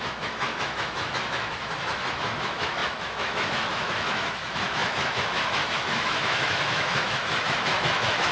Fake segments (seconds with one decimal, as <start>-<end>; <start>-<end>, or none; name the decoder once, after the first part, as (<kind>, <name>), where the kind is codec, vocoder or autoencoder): 0.0-8.3 (autoencoder, DAC-VAE)